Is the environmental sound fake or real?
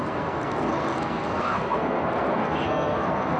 fake